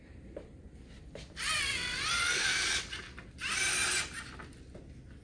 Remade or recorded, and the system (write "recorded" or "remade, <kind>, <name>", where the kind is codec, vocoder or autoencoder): recorded